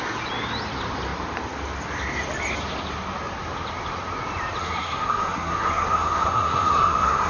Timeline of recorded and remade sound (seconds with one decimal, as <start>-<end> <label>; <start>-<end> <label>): 0.0-4.6 recorded; 4.6-7.3 remade